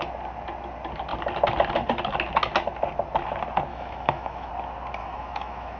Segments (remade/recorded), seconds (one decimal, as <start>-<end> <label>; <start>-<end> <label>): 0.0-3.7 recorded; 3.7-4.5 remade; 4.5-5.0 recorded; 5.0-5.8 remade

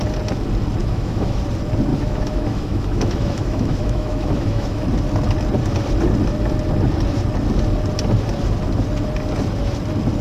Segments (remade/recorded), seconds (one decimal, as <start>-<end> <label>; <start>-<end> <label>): 0.0-0.8 recorded; 0.8-1.4 remade; 1.4-1.9 recorded; 1.9-4.9 remade; 4.9-10.2 recorded

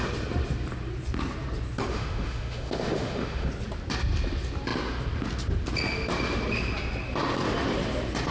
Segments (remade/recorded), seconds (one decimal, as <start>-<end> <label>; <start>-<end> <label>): 0.0-1.9 recorded; 1.9-3.5 remade; 3.5-8.3 recorded

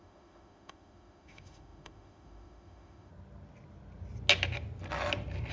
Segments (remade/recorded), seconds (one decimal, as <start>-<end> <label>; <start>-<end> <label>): 0.0-3.1 remade; 3.1-5.5 recorded

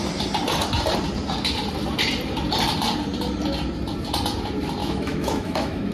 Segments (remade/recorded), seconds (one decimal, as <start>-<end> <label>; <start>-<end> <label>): 0.0-4.8 recorded; 4.8-5.9 remade